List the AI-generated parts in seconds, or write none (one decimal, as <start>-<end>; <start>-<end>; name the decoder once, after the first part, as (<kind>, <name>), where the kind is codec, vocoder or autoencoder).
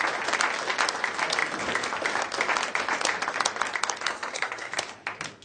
4.1-4.7 (codec, SNAC)